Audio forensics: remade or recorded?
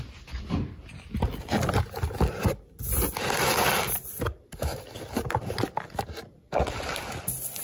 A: recorded